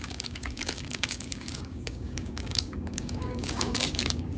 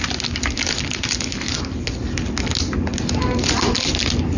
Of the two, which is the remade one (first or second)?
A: first